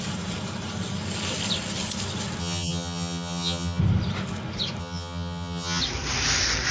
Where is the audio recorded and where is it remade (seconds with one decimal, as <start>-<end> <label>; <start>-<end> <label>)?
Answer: 0.0-2.4 recorded; 2.4-3.8 remade; 3.8-4.8 recorded; 4.8-5.8 remade; 5.8-6.7 recorded